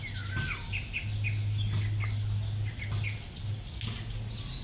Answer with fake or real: real